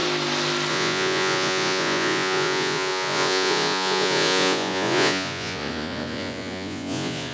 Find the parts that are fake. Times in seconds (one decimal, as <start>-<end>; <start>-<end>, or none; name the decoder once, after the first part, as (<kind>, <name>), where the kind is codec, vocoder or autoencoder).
0.7-7.3 (vocoder, Vocos)